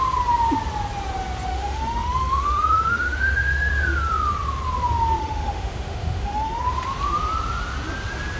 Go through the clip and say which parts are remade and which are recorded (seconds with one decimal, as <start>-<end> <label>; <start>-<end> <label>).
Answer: 0.0-1.5 recorded; 1.5-3.7 remade; 3.7-5.2 recorded; 5.2-6.6 remade; 6.6-8.4 recorded